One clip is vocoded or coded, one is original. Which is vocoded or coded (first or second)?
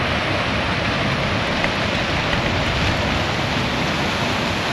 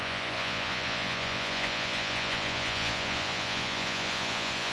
second